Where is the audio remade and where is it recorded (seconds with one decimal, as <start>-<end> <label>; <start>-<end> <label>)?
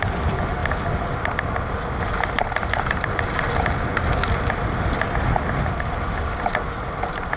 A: 0.0-7.4 recorded